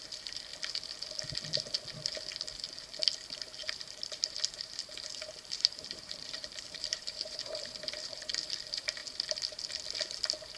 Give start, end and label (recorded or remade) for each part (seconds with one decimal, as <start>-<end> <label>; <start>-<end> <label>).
0.0-3.6 recorded; 3.6-8.3 remade; 8.3-10.6 recorded

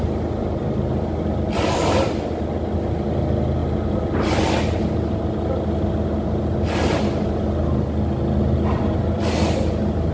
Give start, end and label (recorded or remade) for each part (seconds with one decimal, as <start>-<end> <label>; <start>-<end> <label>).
0.0-10.1 recorded

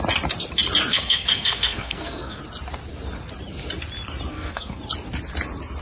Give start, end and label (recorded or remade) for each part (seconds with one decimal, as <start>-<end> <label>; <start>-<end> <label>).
0.0-0.9 recorded; 0.9-2.4 remade; 2.4-4.3 recorded; 4.3-4.8 remade; 4.8-5.8 recorded

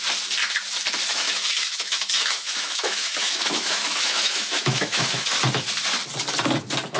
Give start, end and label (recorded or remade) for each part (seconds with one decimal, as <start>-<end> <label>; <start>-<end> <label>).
0.0-1.1 recorded; 1.1-5.3 remade; 5.3-7.0 recorded